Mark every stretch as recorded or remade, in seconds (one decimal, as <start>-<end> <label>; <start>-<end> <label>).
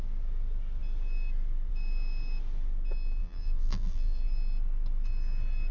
0.0-3.2 recorded; 3.2-4.2 remade; 4.2-5.7 recorded